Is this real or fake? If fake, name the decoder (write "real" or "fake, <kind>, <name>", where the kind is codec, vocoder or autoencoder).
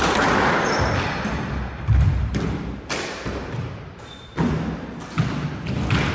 real